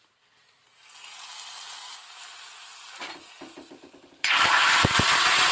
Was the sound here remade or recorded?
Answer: recorded